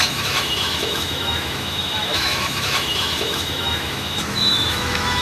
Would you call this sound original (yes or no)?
no